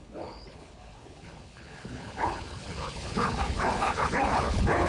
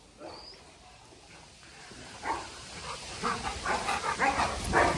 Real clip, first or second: second